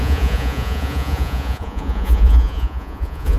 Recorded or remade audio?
remade